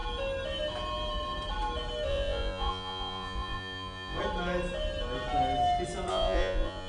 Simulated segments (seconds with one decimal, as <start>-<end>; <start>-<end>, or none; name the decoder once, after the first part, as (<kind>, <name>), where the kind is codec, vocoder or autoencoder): 2.1-4.2 (vocoder, Vocos); 6.1-6.9